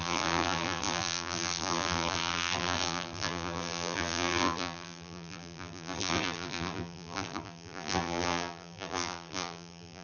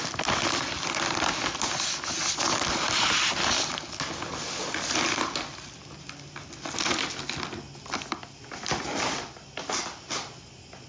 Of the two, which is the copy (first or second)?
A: first